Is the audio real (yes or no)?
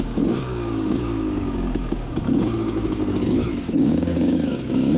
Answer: no